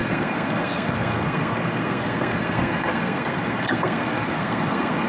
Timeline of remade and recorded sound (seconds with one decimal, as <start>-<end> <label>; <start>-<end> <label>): 0.0-5.1 remade